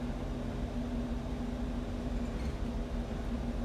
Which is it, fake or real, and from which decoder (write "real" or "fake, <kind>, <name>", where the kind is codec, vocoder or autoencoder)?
real